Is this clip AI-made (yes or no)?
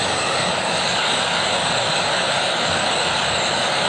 yes